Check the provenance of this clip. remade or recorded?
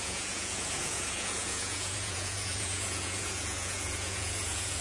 remade